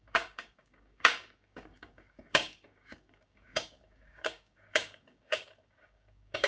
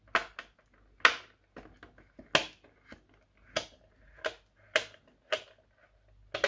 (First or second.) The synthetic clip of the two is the first